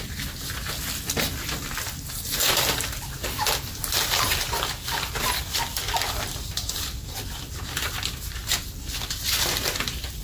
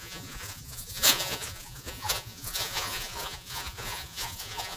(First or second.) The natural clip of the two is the first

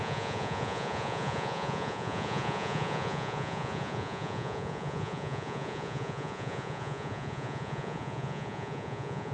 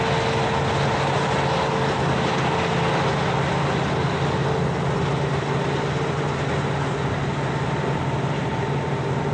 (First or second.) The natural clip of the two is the second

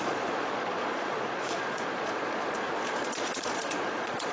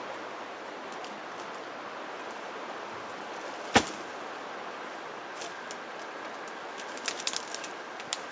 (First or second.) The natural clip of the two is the second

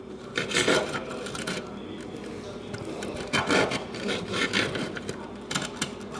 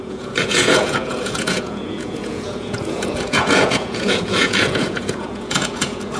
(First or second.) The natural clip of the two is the first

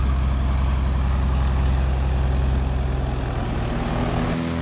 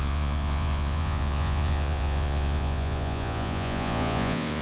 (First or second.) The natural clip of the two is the first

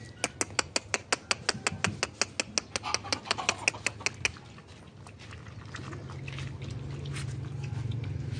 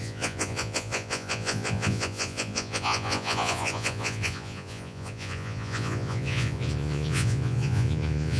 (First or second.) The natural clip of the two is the first